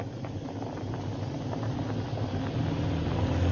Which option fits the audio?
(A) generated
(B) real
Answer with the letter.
B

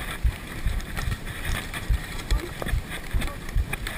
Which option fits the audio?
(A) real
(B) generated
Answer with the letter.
B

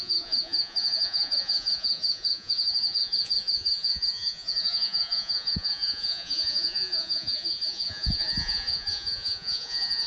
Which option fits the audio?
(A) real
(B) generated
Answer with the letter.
B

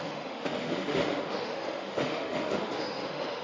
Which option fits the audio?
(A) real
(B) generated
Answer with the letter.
B